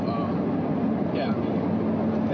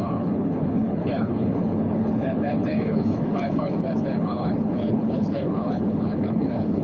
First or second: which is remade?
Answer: second